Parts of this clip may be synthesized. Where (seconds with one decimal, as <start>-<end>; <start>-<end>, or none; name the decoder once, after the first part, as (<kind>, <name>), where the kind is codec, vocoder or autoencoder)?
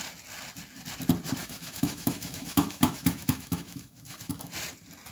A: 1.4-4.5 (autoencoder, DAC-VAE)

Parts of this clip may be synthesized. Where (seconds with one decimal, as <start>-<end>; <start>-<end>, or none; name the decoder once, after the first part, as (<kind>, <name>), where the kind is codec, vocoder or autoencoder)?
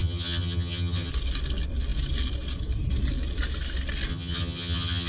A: 0.0-1.1 (vocoder, HiFi-GAN); 4.1-5.1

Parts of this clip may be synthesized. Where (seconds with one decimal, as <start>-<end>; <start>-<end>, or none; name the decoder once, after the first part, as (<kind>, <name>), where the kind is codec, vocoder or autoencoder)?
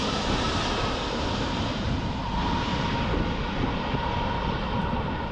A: 0.0-2.7 (vocoder, BigVGAN v2); 4.1-5.3